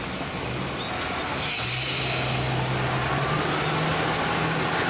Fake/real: real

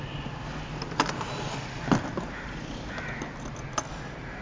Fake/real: real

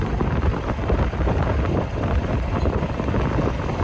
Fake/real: fake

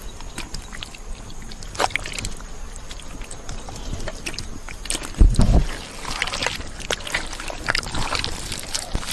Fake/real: real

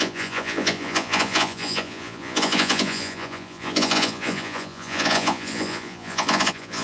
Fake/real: fake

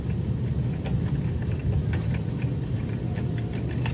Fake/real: fake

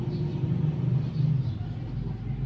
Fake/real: real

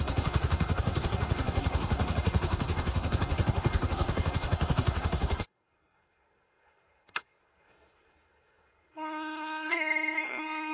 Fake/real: fake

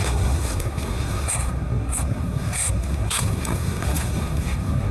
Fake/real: fake